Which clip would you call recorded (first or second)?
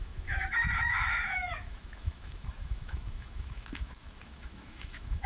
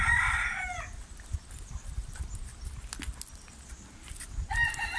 second